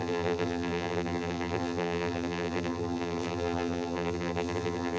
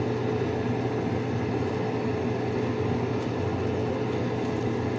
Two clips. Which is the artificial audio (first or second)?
first